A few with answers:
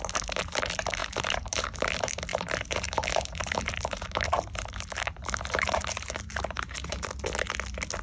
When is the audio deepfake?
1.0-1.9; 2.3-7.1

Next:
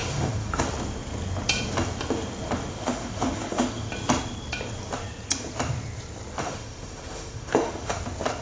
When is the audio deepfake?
0.0-0.6; 2.7-3.9; 6.4-8.0

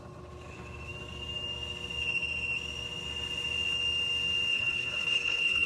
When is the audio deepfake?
4.5-5.7

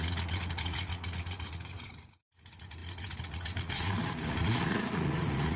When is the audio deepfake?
0.0-5.6

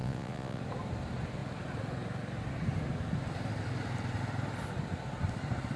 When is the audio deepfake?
0.0-0.6

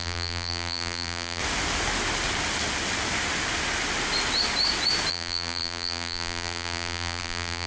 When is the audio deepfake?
0.0-1.4; 5.1-7.7

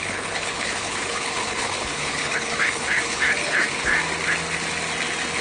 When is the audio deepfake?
0.0-3.9

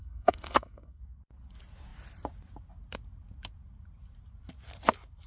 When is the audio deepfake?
0.0-1.0